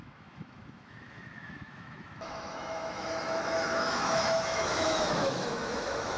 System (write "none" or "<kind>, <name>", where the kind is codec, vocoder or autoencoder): autoencoder, DAC-VAE